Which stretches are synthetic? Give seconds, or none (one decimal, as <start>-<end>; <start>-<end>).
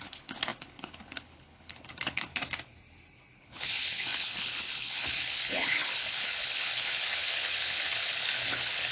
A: 0.0-2.3; 3.4-8.9